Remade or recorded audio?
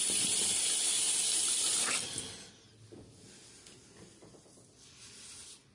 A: recorded